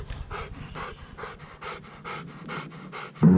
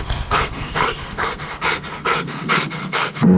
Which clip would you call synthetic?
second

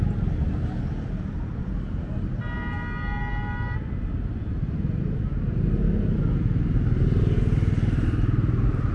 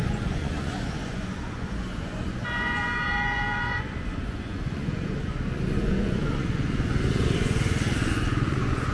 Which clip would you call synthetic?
second